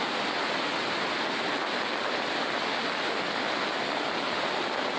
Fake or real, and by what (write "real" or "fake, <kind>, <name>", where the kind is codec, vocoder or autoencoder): real